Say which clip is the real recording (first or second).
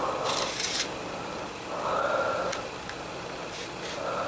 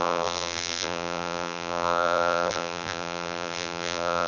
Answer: first